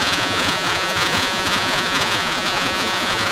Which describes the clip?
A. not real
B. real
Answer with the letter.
A